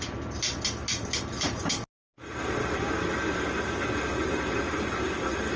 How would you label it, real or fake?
real